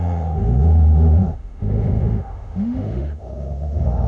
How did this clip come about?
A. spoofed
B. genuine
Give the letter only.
A